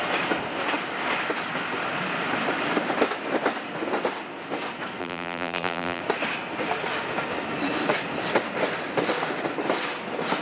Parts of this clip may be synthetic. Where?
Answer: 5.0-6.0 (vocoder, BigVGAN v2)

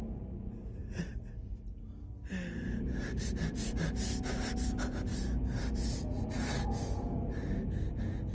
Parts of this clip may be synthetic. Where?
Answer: none

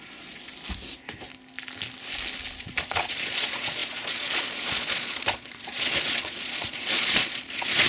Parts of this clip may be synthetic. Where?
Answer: 0.0-0.5 (vocoder, Vocos); 2.6-7.9

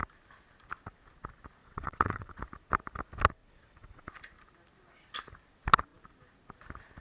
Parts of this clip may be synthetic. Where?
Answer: 1.6-2.4 (vocoder, WaveNeXt); 3.4-4.1

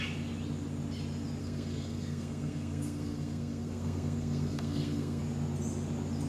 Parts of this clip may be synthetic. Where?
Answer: 1.4-5.2 (codec, SNAC)

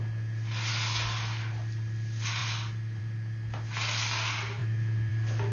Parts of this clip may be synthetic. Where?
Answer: none

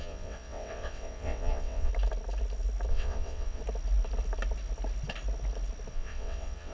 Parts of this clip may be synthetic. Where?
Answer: 0.0-1.9 (vocoder, WaveNeXt); 2.9-3.6; 5.9-6.7